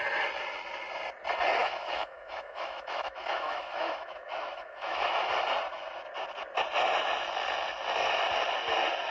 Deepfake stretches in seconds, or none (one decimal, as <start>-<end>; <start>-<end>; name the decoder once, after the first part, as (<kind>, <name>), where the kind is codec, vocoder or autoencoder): 1.6-5.3 (autoencoder, DAC-VAE)

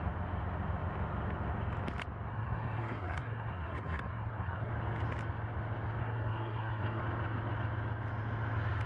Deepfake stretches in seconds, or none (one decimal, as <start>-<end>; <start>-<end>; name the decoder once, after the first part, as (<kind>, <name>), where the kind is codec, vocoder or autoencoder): 2.3-4.7 (codec, SNAC); 6.0-7.0

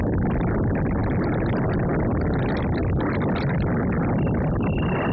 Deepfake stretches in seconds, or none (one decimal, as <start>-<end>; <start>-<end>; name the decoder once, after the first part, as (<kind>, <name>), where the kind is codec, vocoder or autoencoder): none

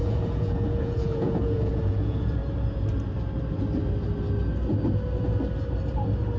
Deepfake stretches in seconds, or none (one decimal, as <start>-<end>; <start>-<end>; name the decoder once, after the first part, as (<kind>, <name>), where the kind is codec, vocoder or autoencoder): 0.0-2.4 (vocoder, Vocos)

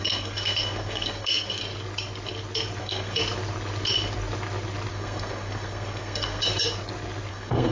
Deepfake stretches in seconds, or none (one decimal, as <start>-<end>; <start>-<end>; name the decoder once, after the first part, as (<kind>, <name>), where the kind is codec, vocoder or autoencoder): 0.0-1.6 (codec, SNAC); 2.8-3.2; 4.9-6.4; 7.3-7.7

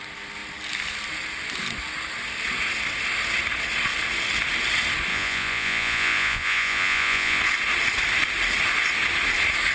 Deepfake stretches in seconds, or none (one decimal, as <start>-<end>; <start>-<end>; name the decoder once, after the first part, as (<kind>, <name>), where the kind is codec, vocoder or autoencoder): 5.1-7.4 (vocoder, Vocos)

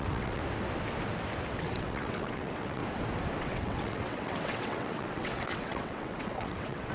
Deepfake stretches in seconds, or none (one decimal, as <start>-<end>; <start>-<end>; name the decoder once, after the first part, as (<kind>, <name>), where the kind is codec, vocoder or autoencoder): 0.0-0.4 (vocoder, WaveNeXt); 1.6-2.8; 3.4-6.9